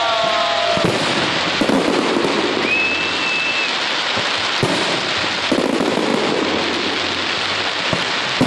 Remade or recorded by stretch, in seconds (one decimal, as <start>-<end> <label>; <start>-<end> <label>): 0.0-8.5 recorded